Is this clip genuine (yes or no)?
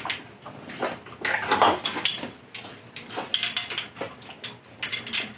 yes